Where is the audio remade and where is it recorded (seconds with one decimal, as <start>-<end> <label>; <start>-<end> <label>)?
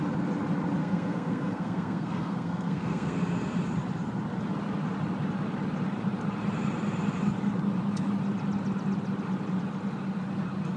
0.0-0.8 recorded; 0.8-3.2 remade; 3.2-10.8 recorded